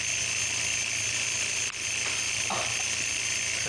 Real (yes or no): yes